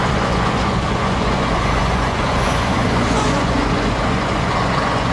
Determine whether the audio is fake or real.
fake